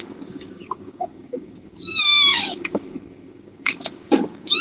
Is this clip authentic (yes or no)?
no